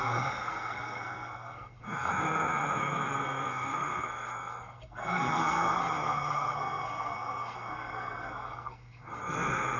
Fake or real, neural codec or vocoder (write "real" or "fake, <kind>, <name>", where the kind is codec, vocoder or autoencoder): fake, codec, SNAC